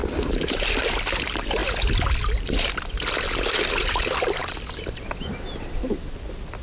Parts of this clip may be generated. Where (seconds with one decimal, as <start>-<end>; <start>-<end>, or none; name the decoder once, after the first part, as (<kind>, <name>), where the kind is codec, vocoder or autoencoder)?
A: 0.8-6.6 (vocoder, BigVGAN v2)